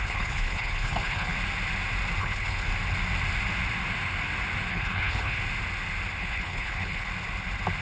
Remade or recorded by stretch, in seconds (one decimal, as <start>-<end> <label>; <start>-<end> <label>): 0.0-1.3 remade; 1.3-2.2 recorded; 2.2-2.7 remade; 2.7-4.7 recorded; 4.7-5.4 remade; 5.4-6.2 recorded; 6.2-7.1 remade; 7.1-7.8 recorded